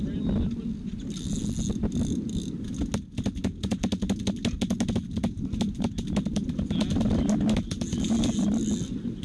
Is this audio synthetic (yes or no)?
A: no